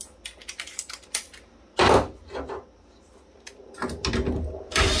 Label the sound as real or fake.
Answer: real